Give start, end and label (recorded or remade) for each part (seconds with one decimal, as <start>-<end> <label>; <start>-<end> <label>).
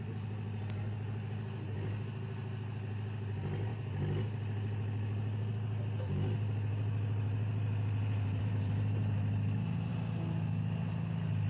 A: 0.0-11.5 recorded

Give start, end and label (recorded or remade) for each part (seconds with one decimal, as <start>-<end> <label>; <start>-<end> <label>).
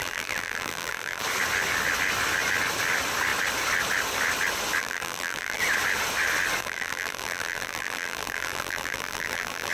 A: 0.0-1.2 remade; 1.2-4.8 recorded; 4.8-5.6 remade; 5.6-6.6 recorded; 6.6-9.7 remade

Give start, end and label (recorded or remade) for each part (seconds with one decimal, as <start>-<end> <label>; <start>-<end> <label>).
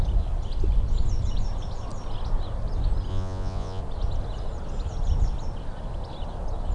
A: 0.0-3.1 recorded; 3.1-3.8 remade; 3.8-6.7 recorded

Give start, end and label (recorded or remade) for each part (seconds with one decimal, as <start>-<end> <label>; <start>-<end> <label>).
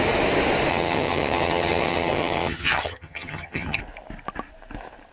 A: 0.0-0.7 recorded; 0.7-3.8 remade; 3.8-5.1 recorded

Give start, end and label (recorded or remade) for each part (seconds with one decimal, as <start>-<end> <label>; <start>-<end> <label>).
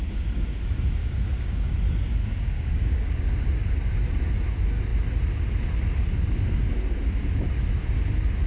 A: 0.0-1.0 recorded; 1.0-1.7 remade; 1.7-2.1 recorded; 2.1-3.3 remade; 3.3-8.5 recorded